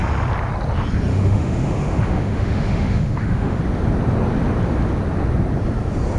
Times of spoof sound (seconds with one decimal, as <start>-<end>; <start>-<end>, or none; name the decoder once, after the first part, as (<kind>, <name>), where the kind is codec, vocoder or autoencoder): 1.1-3.6 (autoencoder, DAC-VAE)